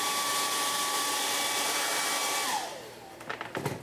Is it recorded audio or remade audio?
remade